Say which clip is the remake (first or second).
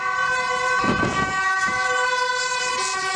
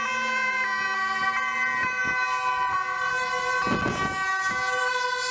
first